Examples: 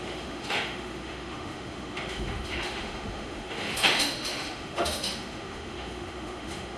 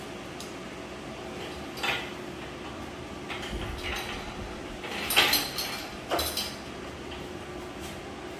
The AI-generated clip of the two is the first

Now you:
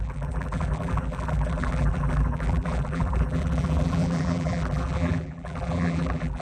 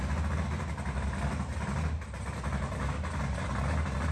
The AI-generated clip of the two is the first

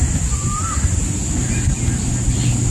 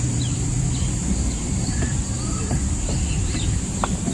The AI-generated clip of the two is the second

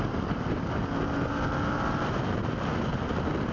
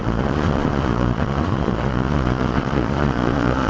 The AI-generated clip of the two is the second